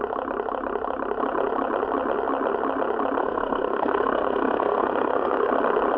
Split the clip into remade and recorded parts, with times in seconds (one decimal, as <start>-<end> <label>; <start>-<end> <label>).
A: 0.0-3.2 recorded; 3.2-5.5 remade; 5.5-6.0 recorded